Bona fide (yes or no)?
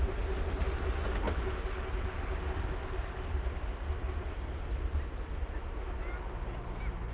yes